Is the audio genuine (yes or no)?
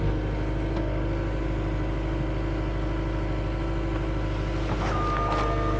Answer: yes